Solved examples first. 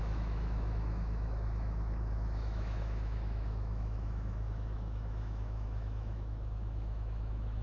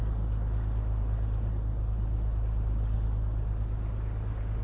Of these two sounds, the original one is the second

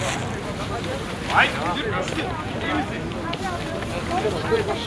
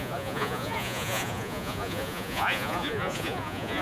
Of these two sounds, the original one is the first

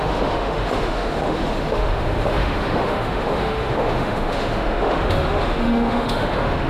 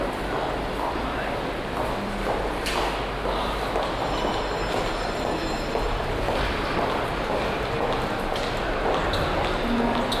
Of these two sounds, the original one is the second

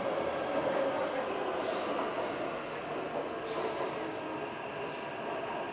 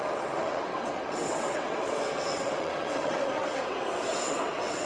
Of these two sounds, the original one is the first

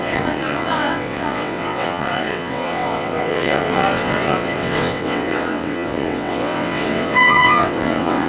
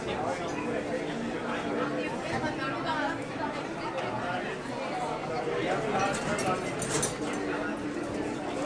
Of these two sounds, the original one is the second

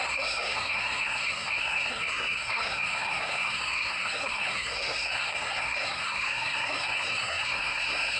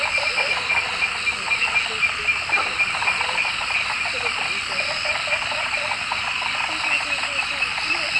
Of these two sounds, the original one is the second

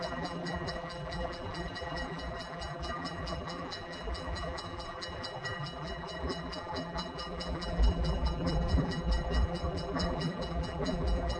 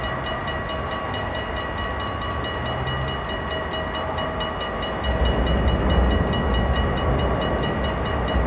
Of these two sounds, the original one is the second